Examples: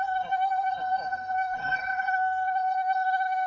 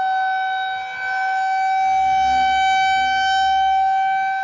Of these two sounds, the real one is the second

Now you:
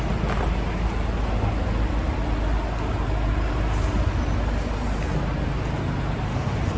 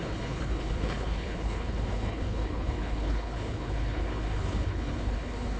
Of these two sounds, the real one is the first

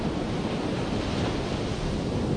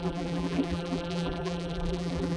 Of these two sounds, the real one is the first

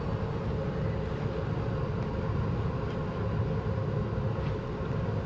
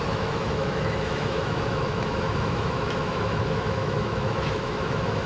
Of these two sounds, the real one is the first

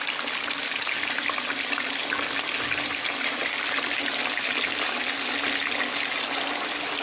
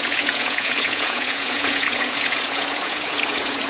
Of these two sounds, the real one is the first